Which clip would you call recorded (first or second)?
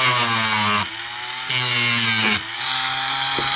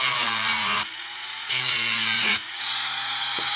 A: first